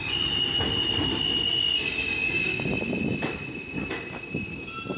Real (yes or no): yes